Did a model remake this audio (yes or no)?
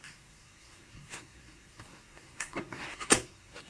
yes